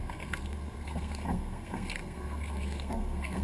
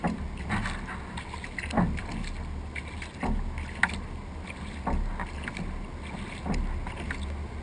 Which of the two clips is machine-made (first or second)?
first